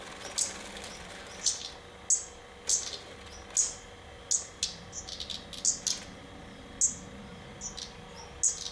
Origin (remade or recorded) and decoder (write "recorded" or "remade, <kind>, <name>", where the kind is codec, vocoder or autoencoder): recorded